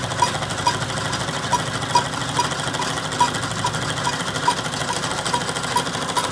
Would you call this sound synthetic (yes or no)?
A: no